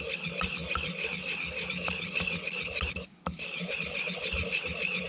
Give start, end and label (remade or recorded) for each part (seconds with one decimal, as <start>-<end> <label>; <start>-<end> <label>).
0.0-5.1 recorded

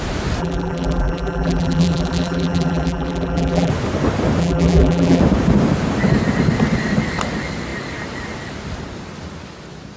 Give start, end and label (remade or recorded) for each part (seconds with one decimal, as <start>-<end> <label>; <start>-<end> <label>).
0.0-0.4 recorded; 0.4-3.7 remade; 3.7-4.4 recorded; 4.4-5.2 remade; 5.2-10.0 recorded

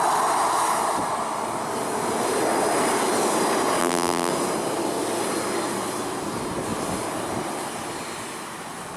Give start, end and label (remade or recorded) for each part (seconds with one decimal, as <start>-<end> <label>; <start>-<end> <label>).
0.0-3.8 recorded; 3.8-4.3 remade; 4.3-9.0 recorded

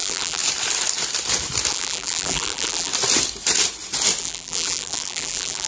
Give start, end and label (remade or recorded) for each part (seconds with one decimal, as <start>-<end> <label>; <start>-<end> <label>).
0.0-0.4 remade; 0.4-1.7 recorded; 1.7-2.9 remade; 2.9-4.2 recorded; 4.2-5.7 remade